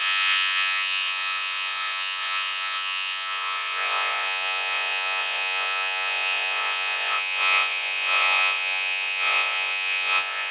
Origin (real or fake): fake